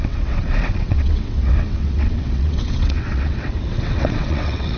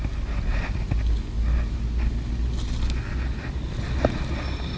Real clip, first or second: second